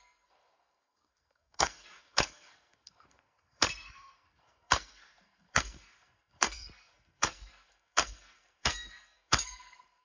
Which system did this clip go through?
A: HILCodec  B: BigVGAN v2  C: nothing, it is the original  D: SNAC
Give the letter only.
D